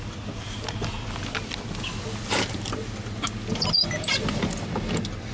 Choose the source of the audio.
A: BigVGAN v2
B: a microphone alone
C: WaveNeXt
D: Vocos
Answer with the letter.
B